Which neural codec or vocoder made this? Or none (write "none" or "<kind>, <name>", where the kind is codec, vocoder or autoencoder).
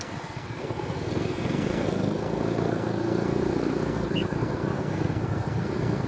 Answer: codec, SNAC